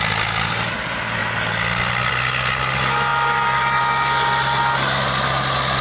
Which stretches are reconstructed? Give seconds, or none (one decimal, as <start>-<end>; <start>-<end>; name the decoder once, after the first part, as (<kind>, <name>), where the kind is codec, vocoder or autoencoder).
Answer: none